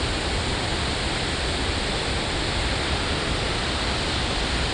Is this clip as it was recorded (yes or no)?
yes